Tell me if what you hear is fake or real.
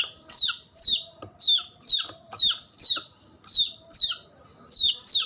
real